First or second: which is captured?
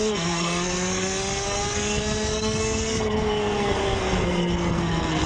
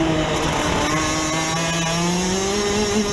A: second